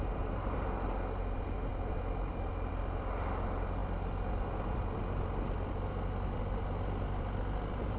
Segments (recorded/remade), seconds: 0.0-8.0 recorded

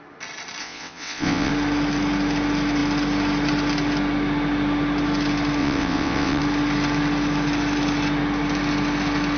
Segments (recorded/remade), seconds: 0.0-0.6 recorded; 0.6-1.5 remade; 1.5-5.6 recorded; 5.6-6.4 remade; 6.4-9.4 recorded

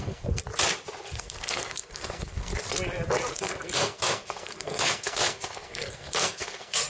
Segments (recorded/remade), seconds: 0.0-0.4 remade; 0.4-1.0 recorded; 1.0-2.5 remade; 2.5-3.3 recorded; 3.3-6.9 remade

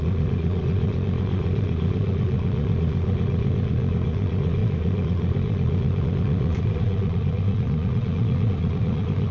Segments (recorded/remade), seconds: 0.0-9.3 remade